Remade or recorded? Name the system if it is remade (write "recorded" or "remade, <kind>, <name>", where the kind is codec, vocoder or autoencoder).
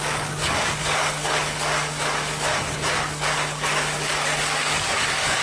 remade, codec, DAC